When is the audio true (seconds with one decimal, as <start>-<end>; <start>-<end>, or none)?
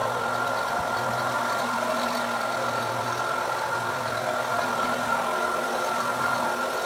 0.0-6.9